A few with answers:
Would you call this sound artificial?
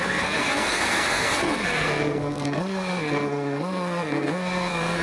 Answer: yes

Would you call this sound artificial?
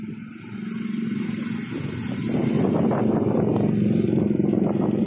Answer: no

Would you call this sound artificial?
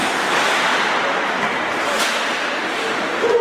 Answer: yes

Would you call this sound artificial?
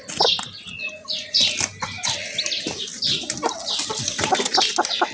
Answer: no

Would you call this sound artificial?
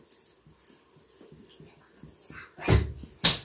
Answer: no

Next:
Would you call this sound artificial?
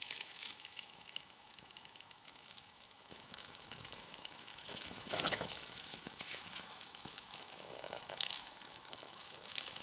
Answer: yes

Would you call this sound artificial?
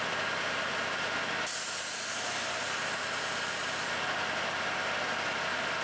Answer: yes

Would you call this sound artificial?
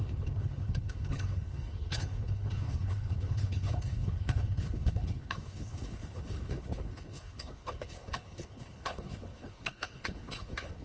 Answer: yes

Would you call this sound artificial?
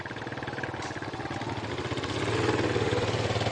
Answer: no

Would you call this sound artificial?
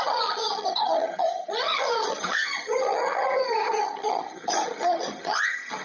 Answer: yes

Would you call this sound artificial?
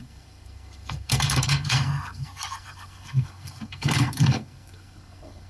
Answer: yes